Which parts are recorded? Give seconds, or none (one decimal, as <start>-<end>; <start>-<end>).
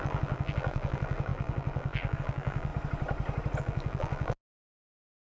2.7-3.6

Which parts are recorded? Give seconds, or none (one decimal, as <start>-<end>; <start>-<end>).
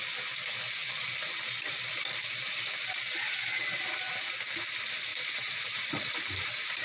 0.0-5.1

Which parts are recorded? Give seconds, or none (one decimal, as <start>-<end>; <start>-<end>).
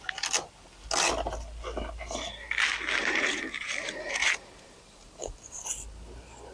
0.0-3.0; 5.7-6.5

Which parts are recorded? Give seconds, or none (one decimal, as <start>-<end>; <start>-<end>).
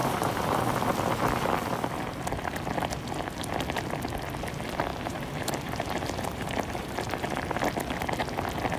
0.6-4.9; 7.4-8.8